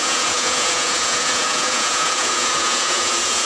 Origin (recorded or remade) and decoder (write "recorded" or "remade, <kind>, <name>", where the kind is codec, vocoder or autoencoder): remade, vocoder, Vocos